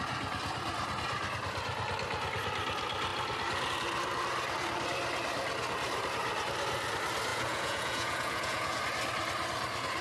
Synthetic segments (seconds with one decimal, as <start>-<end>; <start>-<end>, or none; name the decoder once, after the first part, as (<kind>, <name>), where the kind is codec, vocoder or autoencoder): 7.3-8.8 (vocoder, Vocos)